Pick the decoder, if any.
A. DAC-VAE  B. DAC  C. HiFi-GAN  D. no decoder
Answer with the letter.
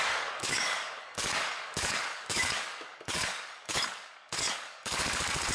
B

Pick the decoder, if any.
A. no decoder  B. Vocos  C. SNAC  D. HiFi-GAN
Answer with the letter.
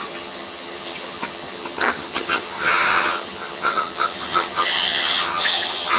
D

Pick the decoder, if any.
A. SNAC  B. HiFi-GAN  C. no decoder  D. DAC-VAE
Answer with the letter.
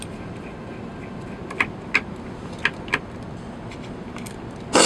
C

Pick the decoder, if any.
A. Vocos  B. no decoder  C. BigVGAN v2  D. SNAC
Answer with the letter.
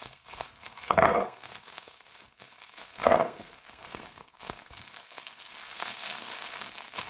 D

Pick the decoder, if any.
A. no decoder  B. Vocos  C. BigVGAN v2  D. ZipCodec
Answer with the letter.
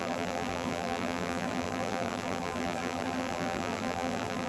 C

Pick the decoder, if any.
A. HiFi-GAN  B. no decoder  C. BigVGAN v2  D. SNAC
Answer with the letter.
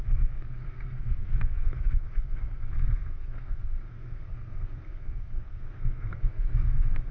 D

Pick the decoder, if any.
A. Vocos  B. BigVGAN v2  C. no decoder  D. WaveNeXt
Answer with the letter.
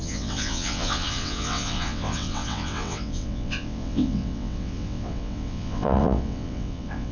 D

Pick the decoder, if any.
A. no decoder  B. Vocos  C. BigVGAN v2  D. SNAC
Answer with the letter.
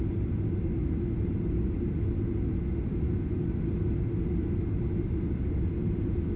A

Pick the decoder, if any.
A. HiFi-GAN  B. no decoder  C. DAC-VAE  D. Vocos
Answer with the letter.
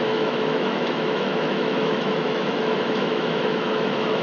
C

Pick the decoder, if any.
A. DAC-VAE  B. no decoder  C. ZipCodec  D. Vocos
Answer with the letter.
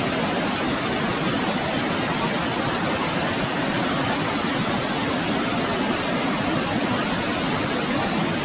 B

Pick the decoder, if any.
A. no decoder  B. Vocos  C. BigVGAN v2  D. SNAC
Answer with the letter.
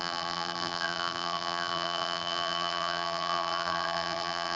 C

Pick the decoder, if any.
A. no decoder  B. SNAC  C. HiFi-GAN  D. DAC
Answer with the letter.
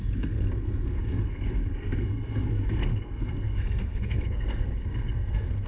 B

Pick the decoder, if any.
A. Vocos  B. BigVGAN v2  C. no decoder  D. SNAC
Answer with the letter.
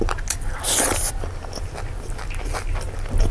C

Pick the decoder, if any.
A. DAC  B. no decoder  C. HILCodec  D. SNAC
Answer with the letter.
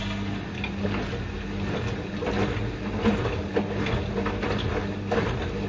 B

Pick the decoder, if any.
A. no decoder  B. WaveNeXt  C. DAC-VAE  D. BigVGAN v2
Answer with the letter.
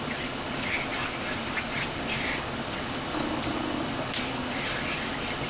A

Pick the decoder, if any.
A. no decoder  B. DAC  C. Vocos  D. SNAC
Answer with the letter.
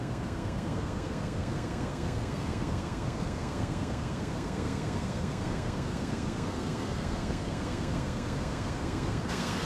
D